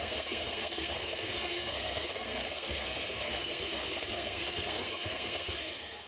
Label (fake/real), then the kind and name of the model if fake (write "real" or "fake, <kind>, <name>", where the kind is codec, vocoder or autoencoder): fake, codec, SNAC